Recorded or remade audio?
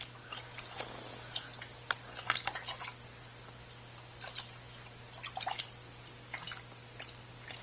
recorded